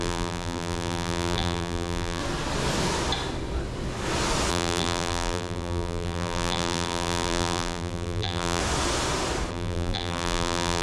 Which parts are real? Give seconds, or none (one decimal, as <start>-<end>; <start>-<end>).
2.2-4.5; 8.6-9.5